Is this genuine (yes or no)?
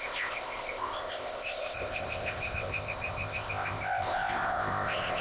no